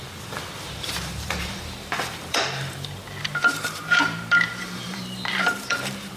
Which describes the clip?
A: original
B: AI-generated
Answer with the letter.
B